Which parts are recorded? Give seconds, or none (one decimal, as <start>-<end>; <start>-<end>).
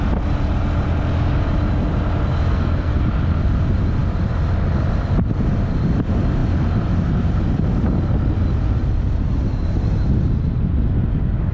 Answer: 0.0-2.5; 3.1-11.5